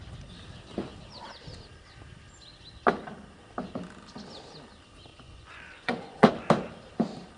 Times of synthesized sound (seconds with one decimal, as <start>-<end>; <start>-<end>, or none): 5.1-6.3